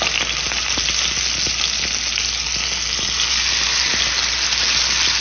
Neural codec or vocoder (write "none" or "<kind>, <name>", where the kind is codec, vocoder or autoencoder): none